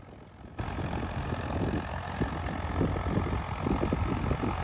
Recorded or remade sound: recorded